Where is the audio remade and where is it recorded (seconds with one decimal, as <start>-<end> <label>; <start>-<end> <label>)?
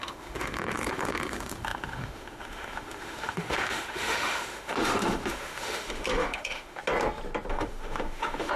0.0-6.8 remade; 6.8-7.5 recorded; 7.5-8.6 remade